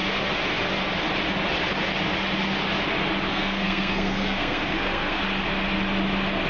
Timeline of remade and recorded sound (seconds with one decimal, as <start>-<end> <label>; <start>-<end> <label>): 0.0-3.3 recorded; 3.3-5.2 remade; 5.2-6.5 recorded